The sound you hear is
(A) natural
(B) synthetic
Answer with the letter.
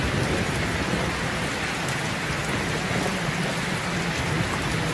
A